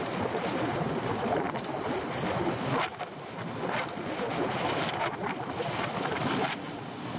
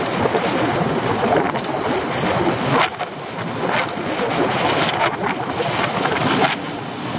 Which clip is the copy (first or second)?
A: first